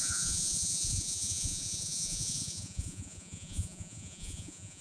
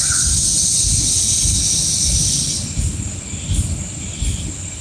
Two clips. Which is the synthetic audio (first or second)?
first